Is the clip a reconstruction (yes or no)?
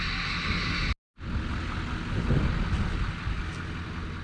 no